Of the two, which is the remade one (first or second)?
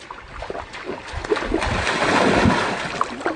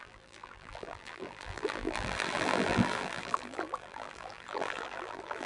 second